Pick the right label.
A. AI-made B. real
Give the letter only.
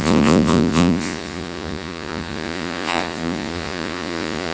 A